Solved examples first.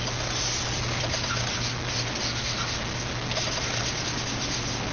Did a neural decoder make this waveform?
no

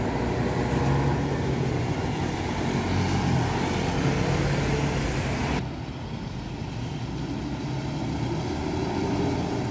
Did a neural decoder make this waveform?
no